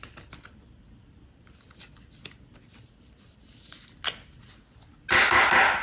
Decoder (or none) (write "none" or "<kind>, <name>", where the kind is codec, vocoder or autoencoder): none